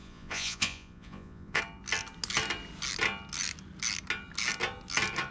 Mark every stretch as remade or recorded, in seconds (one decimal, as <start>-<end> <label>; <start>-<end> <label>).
0.0-1.6 remade; 1.6-5.3 recorded